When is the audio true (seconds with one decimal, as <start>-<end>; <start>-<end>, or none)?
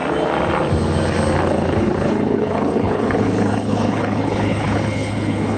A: 0.0-1.4